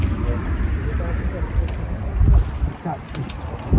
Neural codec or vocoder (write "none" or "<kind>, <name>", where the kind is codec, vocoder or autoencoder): none